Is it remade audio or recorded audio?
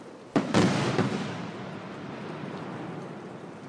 recorded